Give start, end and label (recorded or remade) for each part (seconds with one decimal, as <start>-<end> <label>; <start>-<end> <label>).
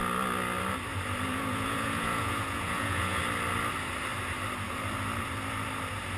0.0-1.3 recorded; 1.3-3.2 remade; 3.2-6.2 recorded